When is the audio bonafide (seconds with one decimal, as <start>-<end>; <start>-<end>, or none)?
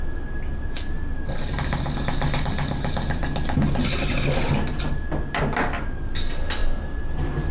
0.0-7.5